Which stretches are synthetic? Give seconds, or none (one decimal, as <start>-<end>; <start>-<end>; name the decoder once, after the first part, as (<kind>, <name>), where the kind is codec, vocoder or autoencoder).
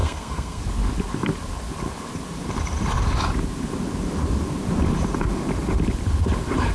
0.0-0.6 (codec, SNAC)